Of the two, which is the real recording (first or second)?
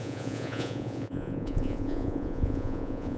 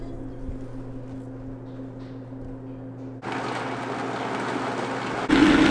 second